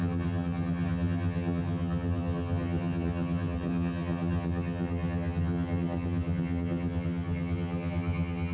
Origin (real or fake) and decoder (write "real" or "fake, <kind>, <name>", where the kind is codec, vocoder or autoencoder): fake, vocoder, HiFi-GAN